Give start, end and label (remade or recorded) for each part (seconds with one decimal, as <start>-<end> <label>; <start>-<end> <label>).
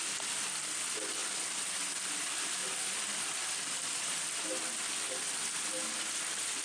0.0-6.6 recorded